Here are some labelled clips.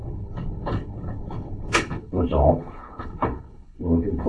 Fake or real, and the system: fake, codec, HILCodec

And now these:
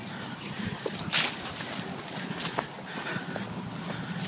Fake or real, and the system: real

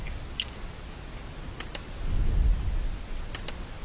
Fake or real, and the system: real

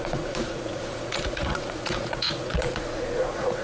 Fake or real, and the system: fake, vocoder, Vocos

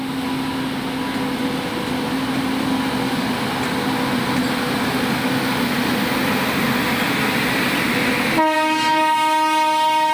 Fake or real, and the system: real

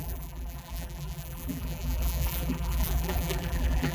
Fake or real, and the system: fake, vocoder, BigVGAN v2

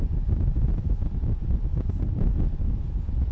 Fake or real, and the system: real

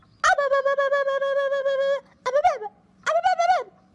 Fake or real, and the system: real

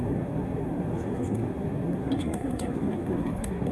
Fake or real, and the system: fake, codec, SNAC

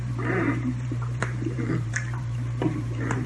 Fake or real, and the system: fake, vocoder, BigVGAN v2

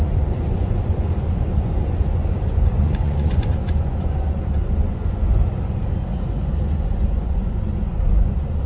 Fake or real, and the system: fake, vocoder, Vocos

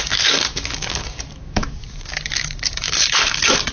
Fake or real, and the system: fake, codec, DAC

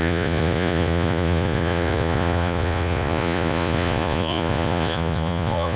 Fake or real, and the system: fake, vocoder, Vocos